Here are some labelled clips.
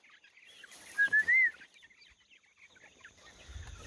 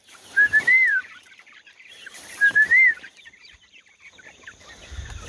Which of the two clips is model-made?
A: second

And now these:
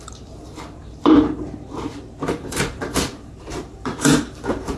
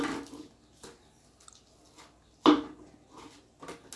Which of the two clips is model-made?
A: first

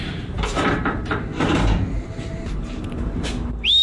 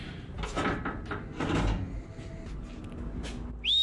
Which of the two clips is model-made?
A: first